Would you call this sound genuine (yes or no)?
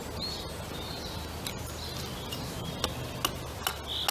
yes